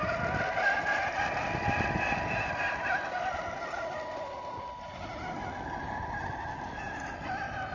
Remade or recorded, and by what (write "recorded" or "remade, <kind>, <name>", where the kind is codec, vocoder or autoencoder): recorded